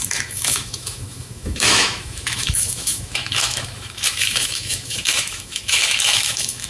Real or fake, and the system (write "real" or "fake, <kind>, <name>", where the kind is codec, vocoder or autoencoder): fake, autoencoder, DAC-VAE